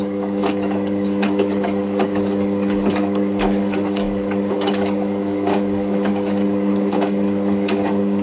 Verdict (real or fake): fake